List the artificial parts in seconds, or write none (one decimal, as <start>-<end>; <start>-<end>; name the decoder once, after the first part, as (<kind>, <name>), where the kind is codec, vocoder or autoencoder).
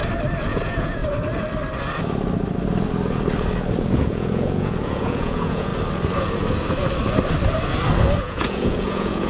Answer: 0.5-1.0 (vocoder, Vocos); 3.9-5.7; 8.2-9.3